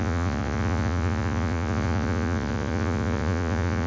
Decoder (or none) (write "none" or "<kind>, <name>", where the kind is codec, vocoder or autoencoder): vocoder, Vocos